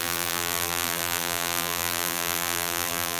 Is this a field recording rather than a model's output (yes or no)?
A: no